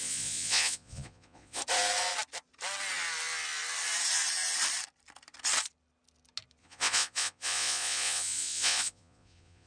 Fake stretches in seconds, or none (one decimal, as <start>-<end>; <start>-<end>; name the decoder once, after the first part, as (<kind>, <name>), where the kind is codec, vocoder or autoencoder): 0.0-1.6 (vocoder, Vocos); 6.6-9.7